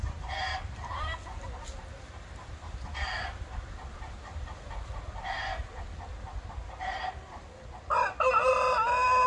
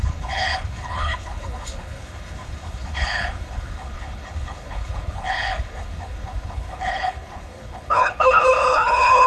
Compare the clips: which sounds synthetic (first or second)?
second